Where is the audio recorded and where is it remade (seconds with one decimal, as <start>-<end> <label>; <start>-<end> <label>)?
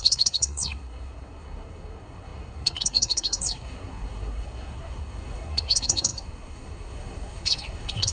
0.0-8.1 remade